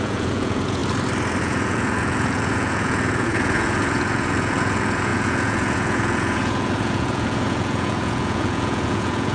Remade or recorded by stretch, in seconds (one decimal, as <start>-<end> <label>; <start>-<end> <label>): 0.0-0.8 remade; 0.8-1.4 recorded; 1.4-9.3 remade